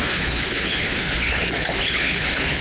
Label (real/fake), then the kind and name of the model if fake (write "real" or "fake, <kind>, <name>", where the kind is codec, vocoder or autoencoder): fake, codec, HILCodec